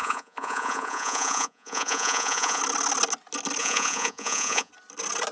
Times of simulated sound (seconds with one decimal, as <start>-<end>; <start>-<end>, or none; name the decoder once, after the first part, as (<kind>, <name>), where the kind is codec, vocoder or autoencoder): 0.0-2.6 (vocoder, Vocos); 3.6-4.7